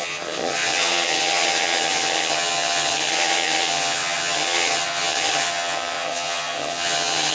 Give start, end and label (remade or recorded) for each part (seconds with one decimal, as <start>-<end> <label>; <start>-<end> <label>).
0.0-7.3 remade